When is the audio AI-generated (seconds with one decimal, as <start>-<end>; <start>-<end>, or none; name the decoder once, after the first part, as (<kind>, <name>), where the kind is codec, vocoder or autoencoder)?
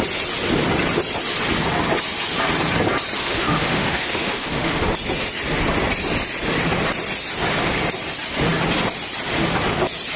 3.2-4.8 (autoencoder, DAC-VAE)